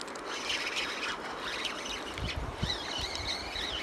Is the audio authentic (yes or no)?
yes